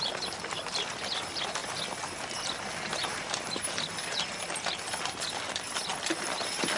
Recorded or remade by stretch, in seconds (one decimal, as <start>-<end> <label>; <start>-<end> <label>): 0.0-6.8 recorded